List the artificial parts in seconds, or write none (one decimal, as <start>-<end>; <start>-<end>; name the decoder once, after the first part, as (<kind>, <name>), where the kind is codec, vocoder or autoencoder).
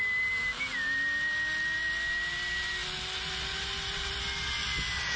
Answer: none